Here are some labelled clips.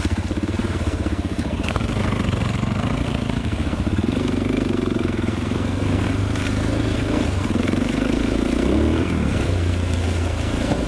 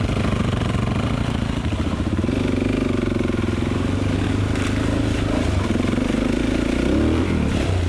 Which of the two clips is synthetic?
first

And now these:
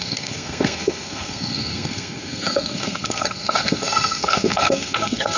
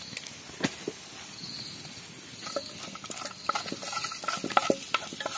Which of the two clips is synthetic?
first